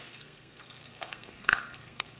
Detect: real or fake fake